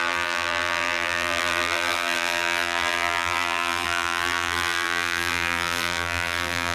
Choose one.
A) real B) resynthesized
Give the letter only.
B